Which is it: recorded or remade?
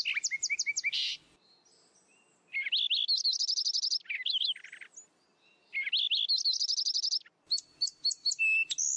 recorded